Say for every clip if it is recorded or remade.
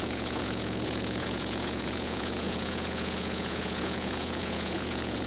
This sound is remade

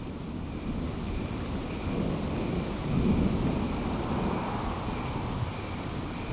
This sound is recorded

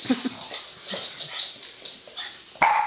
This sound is recorded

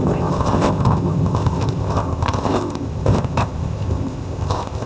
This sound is remade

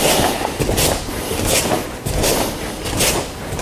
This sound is recorded